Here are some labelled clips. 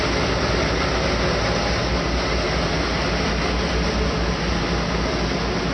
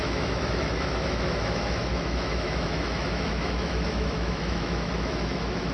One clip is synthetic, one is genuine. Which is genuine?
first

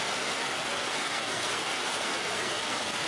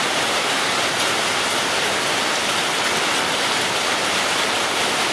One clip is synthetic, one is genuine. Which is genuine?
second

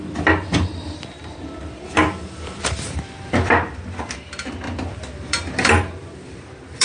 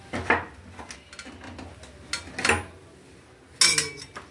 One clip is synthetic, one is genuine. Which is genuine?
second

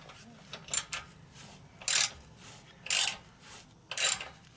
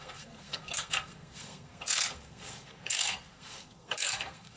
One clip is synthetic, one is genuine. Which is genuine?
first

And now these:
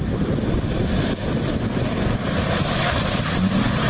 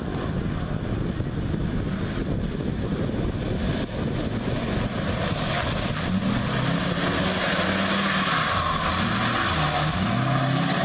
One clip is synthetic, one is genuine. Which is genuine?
second